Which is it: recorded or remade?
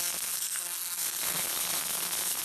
remade